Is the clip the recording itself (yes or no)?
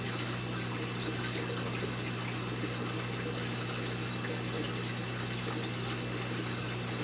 yes